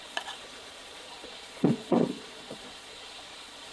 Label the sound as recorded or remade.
remade